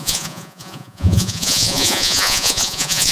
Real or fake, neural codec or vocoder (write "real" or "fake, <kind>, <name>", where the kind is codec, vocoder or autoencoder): fake, vocoder, Vocos